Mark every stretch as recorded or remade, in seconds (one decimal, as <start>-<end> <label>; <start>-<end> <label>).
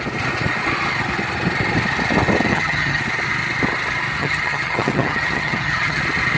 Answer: 0.0-2.5 recorded; 2.5-3.0 remade; 3.0-4.2 recorded; 4.2-6.0 remade; 6.0-6.4 recorded